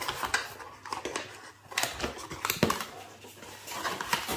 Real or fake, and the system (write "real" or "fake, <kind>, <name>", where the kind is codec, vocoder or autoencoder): real